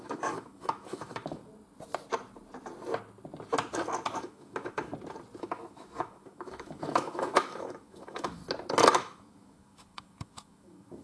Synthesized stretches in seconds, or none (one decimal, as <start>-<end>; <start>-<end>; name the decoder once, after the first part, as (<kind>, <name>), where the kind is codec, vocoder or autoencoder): 0.0-1.4 (autoencoder, DAC-VAE); 4.2-4.9; 5.4-8.4; 8.9-11.0